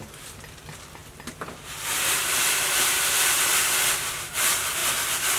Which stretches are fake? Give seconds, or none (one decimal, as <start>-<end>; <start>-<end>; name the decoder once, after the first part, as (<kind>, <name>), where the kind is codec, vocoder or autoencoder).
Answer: 0.0-3.6 (vocoder, BigVGAN v2); 4.3-4.8